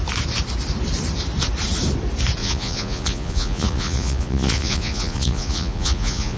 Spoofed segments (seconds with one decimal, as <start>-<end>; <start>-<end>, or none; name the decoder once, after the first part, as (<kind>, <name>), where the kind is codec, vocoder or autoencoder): 2.4-6.4 (vocoder, Vocos)